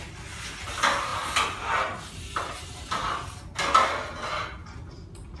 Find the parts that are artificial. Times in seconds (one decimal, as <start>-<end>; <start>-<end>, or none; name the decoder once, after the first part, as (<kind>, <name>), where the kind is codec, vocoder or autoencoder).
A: none